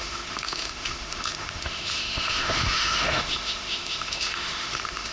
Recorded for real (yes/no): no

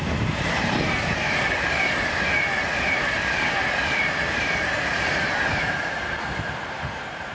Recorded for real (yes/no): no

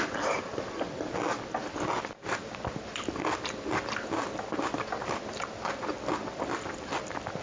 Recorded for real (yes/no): yes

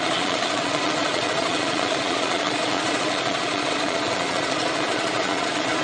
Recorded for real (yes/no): no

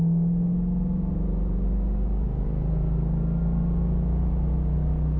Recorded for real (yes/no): yes